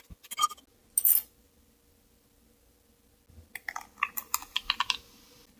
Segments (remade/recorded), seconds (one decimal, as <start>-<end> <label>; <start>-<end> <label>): 0.0-5.6 recorded